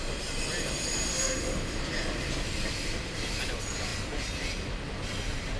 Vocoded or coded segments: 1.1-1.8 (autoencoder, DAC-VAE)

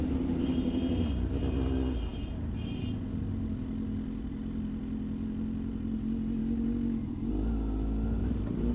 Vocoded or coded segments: none

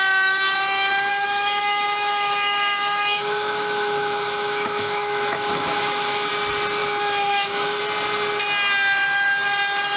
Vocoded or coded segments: 1.1-6.3 (autoencoder, DAC-VAE); 6.8-7.8

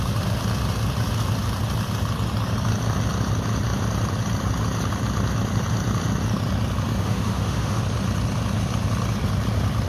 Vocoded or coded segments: 7.0-7.8 (autoencoder, DAC-VAE)

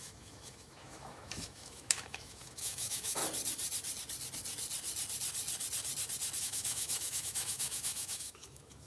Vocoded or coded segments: 0.0-3.2 (autoencoder, DAC-VAE); 6.4-8.9

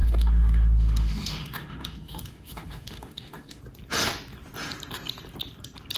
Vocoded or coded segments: 0.0-3.6 (autoencoder, DAC-VAE)

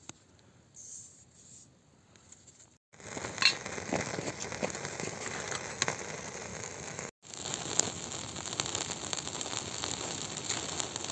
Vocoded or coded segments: 6.5-7.1 (autoencoder, DAC-VAE)